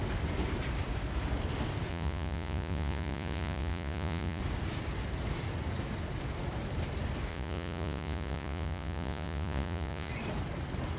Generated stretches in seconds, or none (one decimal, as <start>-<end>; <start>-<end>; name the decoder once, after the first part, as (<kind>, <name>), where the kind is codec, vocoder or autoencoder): 1.9-4.4 (vocoder, Vocos); 7.3-10.1